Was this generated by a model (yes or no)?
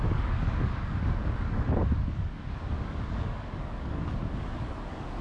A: yes